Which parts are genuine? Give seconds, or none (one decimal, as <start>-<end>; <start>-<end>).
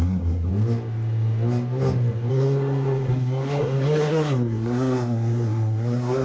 0.5-2.3